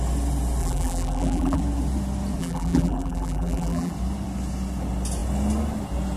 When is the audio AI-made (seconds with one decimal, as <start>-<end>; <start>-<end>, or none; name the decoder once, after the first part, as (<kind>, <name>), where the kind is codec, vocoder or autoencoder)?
0.6-1.6 (vocoder, BigVGAN v2); 2.4-3.9